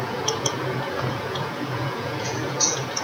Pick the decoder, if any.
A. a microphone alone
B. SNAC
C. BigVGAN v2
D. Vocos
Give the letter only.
D